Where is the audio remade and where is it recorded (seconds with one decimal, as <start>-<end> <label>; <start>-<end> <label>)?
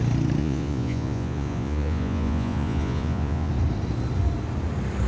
0.0-0.4 recorded; 0.4-3.5 remade; 3.5-5.1 recorded